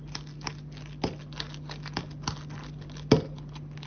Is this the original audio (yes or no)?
yes